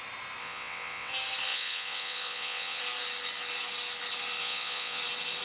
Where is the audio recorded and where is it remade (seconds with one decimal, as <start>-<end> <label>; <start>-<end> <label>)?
0.0-0.4 recorded; 0.4-1.1 remade; 1.1-1.5 recorded; 1.5-2.8 remade; 2.8-4.4 recorded; 4.4-5.0 remade; 5.0-5.4 recorded